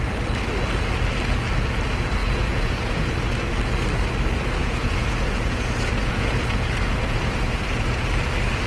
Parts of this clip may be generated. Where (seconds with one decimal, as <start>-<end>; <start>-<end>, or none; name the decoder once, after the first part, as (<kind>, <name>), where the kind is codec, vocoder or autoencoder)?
2.2-3.1 (vocoder, Vocos); 4.6-8.0